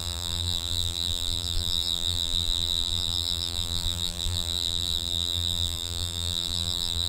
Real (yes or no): no